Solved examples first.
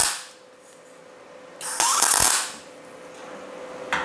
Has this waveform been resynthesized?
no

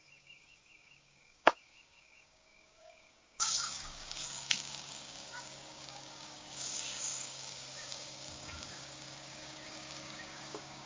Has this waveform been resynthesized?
yes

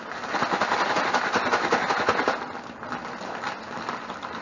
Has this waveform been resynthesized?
no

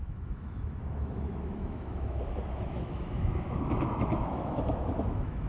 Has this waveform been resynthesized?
yes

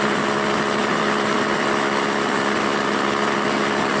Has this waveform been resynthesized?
no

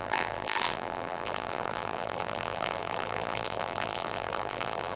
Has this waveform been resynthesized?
yes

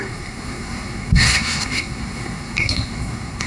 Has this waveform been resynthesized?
yes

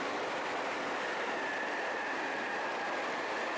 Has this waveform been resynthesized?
yes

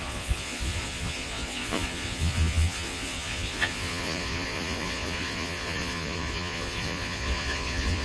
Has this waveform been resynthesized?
yes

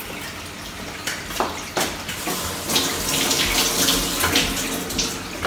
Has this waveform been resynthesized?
no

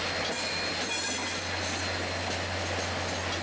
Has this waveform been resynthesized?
no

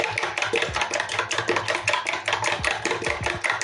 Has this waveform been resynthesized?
no